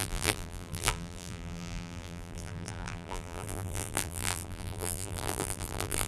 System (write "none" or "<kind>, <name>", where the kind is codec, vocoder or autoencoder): vocoder, BigVGAN v2